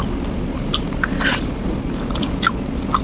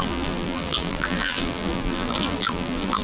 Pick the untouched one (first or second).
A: first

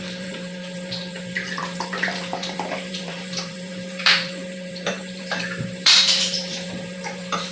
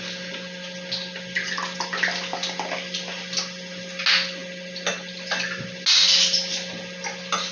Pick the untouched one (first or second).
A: second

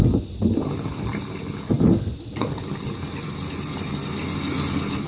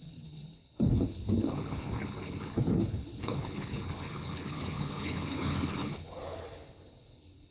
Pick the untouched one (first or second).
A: first